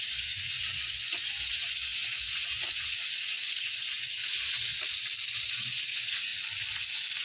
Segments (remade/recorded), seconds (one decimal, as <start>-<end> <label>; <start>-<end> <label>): 0.0-4.7 remade; 4.7-5.4 recorded; 5.4-6.3 remade; 6.3-7.2 recorded